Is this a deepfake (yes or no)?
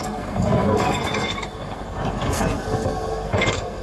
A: yes